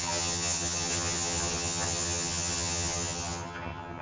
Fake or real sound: fake